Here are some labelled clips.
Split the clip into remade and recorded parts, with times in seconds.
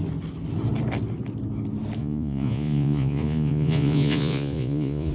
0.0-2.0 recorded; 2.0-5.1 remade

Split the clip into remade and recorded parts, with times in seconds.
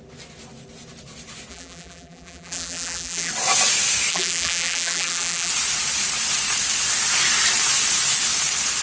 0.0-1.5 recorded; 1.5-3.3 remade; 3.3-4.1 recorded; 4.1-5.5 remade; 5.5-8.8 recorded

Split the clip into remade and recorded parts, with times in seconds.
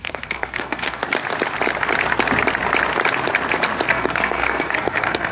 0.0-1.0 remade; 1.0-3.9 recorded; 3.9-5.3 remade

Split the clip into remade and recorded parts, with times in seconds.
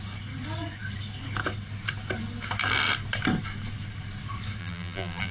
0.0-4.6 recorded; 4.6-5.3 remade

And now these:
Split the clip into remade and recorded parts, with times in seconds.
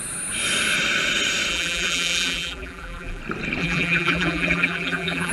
0.0-1.5 recorded; 1.5-3.2 remade; 3.2-3.6 recorded; 3.6-5.3 remade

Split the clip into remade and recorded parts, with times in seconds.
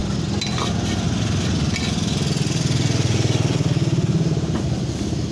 0.0-5.3 recorded